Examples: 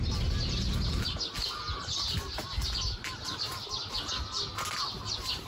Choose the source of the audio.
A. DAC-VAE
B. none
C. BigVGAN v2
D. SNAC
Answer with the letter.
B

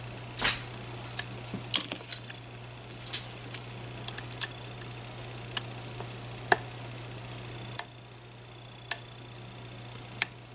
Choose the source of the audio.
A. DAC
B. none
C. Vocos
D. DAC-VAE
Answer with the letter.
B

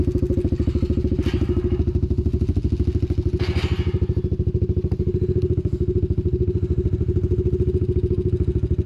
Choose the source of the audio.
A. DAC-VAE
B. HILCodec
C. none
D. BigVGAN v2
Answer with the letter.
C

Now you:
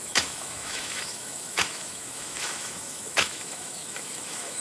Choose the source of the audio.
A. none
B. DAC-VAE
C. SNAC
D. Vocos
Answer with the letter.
B